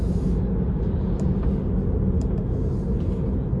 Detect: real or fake real